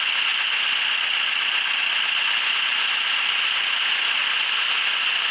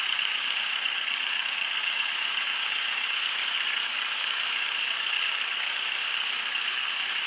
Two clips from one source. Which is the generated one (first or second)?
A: second